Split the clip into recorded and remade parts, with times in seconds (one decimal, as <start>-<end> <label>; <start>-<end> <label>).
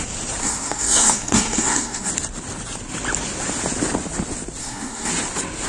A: 0.0-0.4 recorded; 0.4-2.1 remade; 2.1-4.6 recorded; 4.6-5.1 remade; 5.1-5.7 recorded